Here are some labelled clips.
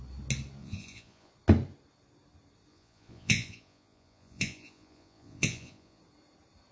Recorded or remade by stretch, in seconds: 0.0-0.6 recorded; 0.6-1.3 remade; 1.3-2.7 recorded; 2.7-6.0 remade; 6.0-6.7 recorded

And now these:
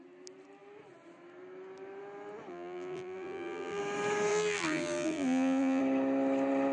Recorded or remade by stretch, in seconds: 0.0-2.5 recorded; 2.5-3.8 remade; 3.8-4.3 recorded; 4.3-5.8 remade; 5.8-6.7 recorded

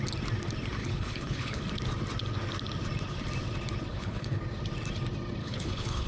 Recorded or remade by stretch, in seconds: 0.0-0.8 recorded; 0.8-1.6 remade; 1.6-3.9 recorded; 3.9-4.4 remade; 4.4-5.4 recorded; 5.4-6.1 remade

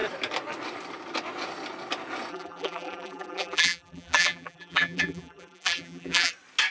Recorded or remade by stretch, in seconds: 0.0-2.3 recorded; 2.3-6.3 remade; 6.3-6.7 recorded

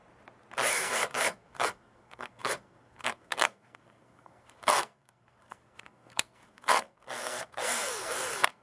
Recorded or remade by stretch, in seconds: 0.0-0.7 recorded; 0.7-8.6 remade

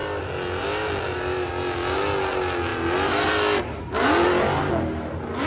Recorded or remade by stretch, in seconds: 0.0-5.5 recorded

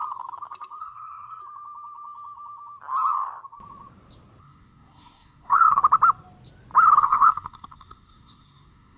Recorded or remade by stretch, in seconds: 0.0-0.8 recorded; 0.8-1.4 remade; 1.4-4.4 recorded; 4.4-5.8 remade; 5.8-7.0 recorded; 7.0-9.0 remade